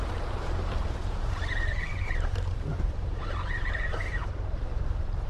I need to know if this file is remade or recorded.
remade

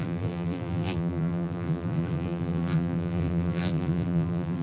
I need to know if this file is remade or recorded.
remade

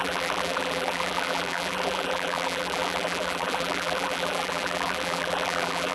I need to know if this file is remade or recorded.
remade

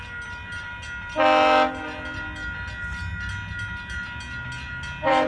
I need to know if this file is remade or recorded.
recorded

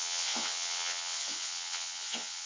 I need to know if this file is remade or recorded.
remade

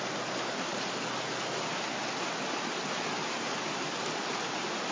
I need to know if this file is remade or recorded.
recorded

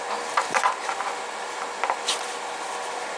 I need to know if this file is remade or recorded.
recorded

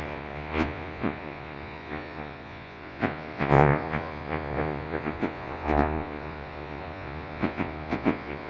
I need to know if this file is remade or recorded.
remade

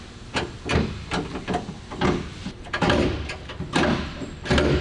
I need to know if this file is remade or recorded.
recorded